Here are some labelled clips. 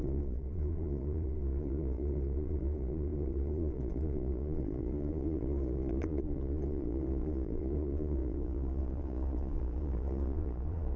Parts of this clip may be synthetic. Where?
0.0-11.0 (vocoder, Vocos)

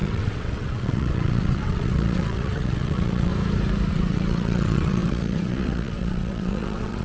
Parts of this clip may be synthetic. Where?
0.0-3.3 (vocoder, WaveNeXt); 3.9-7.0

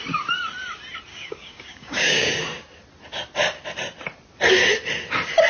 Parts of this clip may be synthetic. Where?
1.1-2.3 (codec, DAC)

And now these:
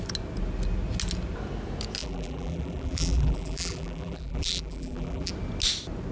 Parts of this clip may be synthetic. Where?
2.0-5.3 (vocoder, BigVGAN v2)

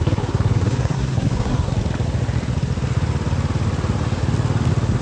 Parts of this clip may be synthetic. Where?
0.0-1.7 (codec, SNAC)

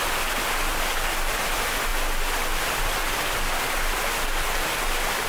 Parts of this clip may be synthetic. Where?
none